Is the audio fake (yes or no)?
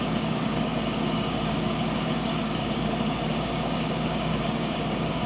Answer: yes